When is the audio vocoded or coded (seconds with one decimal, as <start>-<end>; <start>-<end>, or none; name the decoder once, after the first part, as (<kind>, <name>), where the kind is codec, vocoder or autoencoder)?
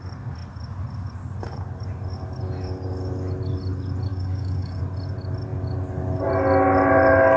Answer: 4.1-4.8 (codec, DAC)